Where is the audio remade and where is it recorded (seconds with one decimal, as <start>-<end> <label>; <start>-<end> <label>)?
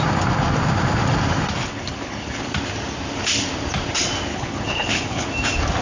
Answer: 0.0-1.7 recorded; 1.7-2.5 remade; 2.5-4.3 recorded; 4.3-5.3 remade; 5.3-5.8 recorded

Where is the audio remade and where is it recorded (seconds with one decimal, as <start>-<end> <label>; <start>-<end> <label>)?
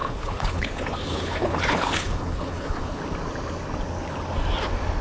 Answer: 0.0-3.0 remade; 3.0-5.0 recorded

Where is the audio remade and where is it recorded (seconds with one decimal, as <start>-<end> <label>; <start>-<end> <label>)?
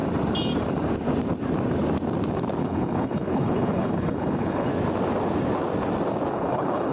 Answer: 0.0-2.6 recorded; 2.6-4.7 remade; 4.7-6.3 recorded; 6.3-6.9 remade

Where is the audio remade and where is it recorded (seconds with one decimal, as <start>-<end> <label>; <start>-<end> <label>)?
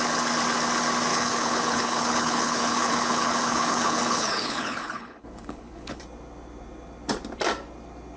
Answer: 0.0-1.1 recorded; 1.1-6.0 remade; 6.0-8.2 recorded